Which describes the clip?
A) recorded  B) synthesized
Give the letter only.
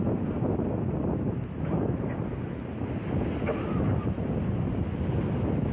A